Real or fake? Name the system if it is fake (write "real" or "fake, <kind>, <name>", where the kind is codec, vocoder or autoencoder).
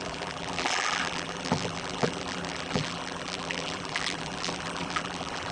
fake, vocoder, BigVGAN v2